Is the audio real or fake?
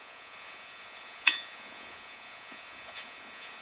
fake